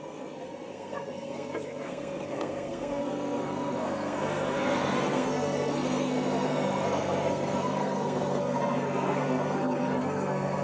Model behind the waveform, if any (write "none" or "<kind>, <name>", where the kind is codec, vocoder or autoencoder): codec, SNAC